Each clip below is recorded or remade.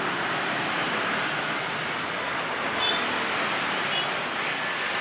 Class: recorded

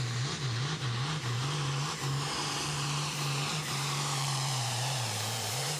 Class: remade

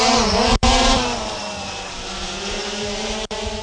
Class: remade